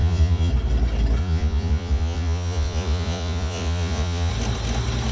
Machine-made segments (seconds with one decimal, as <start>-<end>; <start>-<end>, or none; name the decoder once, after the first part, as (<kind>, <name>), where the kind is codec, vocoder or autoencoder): 0.0-0.5 (vocoder, Vocos); 1.2-4.3